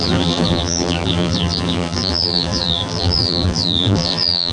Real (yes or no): no